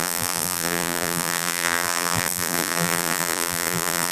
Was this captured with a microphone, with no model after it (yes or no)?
no